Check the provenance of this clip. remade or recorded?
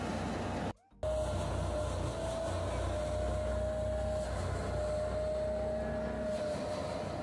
recorded